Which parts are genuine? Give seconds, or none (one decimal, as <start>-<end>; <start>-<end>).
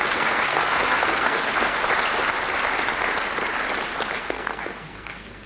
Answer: 1.8-4.2